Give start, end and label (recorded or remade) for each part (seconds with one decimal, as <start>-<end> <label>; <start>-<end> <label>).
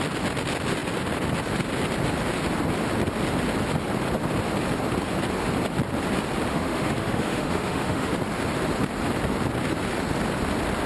0.0-6.5 recorded; 6.5-8.1 remade; 8.1-10.9 recorded